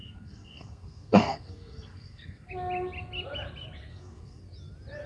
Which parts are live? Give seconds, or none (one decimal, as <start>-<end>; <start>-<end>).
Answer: 2.5-3.9; 4.4-5.1